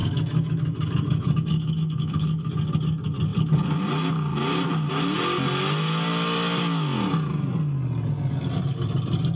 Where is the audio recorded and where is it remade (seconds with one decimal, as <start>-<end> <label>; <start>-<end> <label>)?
0.0-2.5 remade; 2.5-9.4 recorded